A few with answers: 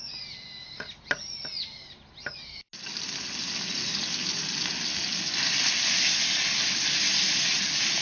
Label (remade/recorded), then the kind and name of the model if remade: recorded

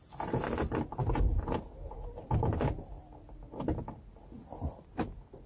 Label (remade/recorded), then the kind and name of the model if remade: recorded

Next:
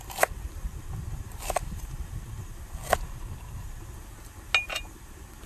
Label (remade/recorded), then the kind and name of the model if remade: recorded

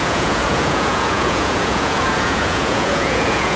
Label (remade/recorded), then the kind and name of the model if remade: remade, vocoder, Vocos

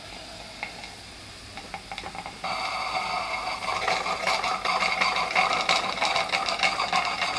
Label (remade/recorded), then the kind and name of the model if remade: recorded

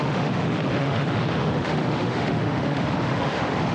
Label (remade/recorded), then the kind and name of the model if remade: remade, autoencoder, DAC-VAE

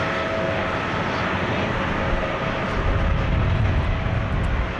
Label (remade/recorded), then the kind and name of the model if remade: recorded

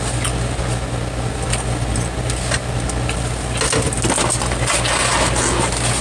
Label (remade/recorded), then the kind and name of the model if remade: recorded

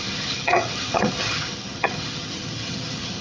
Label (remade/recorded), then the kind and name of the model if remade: remade, vocoder, HiFi-GAN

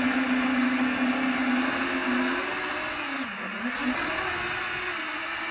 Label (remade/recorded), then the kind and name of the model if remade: recorded